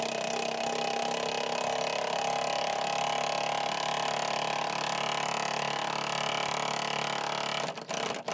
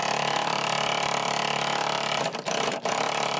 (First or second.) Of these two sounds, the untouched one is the first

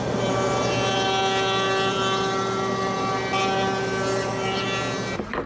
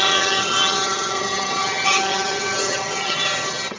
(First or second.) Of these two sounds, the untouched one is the first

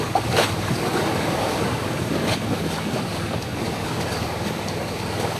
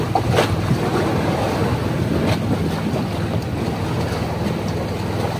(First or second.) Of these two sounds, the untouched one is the second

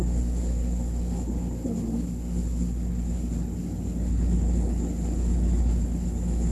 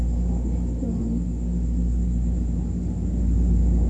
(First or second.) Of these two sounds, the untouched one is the second